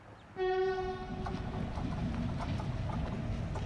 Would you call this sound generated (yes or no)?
no